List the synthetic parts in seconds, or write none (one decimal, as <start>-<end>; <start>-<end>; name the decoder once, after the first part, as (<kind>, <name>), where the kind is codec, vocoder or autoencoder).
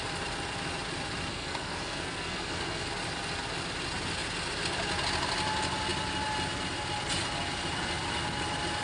1.3-2.9 (codec, SNAC)